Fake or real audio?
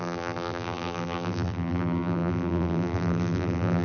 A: fake